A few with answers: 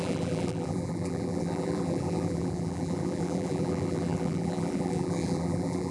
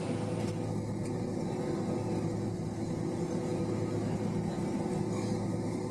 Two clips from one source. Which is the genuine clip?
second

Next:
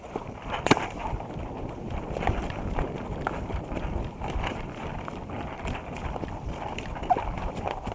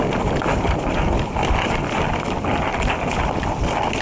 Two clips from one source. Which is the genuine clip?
second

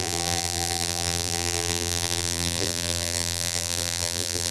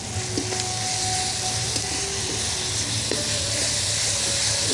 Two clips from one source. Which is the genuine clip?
second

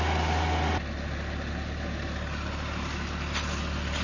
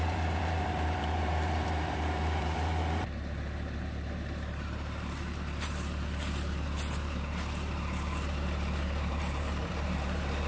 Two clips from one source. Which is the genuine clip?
first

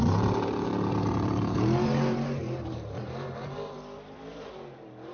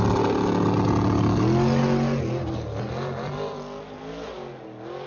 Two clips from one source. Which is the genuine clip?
second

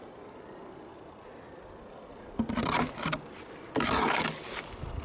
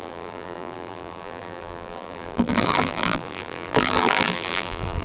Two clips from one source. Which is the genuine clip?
first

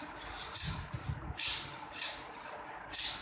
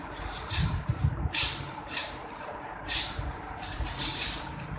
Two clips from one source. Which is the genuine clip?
first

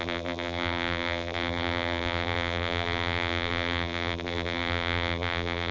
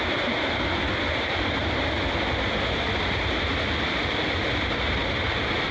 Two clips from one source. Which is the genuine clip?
second